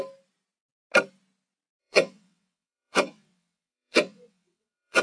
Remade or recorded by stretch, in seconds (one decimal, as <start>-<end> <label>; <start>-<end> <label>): 0.0-1.8 recorded; 1.8-5.0 remade